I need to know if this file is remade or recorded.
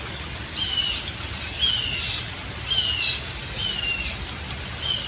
recorded